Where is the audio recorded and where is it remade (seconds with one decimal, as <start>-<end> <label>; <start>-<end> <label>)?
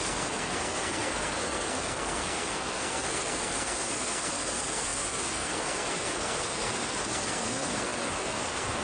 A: 0.0-8.8 remade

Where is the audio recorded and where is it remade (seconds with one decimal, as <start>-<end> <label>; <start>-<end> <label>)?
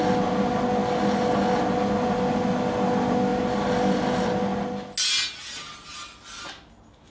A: 0.0-7.1 recorded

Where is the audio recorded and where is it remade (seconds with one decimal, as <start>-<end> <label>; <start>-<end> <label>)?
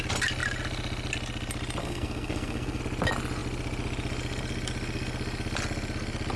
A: 0.0-1.8 recorded; 1.8-2.8 remade; 2.8-6.4 recorded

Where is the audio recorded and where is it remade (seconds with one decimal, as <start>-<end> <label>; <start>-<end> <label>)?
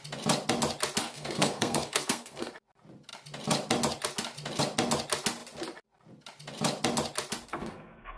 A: 0.0-1.0 recorded; 1.0-2.5 remade; 2.5-7.5 recorded; 7.5-8.2 remade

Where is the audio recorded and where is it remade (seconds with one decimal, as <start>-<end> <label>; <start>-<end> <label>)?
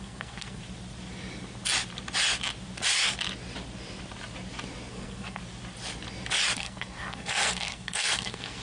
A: 0.0-0.6 remade; 0.6-4.9 recorded; 4.9-5.4 remade; 5.4-6.6 recorded; 6.6-8.6 remade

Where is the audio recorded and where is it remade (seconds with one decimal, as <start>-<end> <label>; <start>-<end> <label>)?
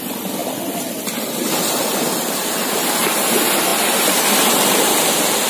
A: 0.0-5.5 recorded